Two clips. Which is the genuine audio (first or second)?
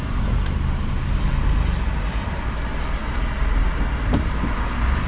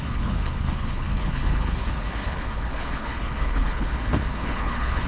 first